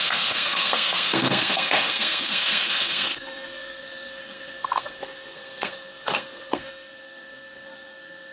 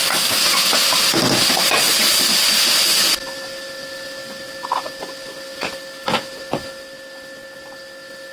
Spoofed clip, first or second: first